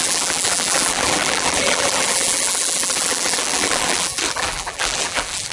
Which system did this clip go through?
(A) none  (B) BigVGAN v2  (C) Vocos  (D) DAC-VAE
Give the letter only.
B